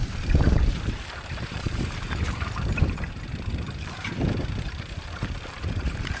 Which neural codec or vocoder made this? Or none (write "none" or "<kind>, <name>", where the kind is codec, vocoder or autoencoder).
vocoder, BigVGAN v2